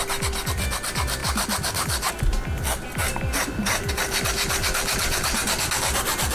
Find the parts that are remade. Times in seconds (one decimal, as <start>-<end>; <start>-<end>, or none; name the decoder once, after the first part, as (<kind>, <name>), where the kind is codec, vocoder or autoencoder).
3.0-5.4 (vocoder, BigVGAN v2)